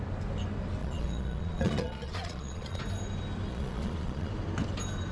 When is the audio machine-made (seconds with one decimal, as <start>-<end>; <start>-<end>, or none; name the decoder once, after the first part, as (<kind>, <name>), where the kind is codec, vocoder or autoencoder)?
0.8-2.8 (vocoder, Vocos); 3.5-4.3